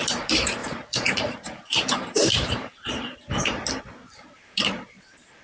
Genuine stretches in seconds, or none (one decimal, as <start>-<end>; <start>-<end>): none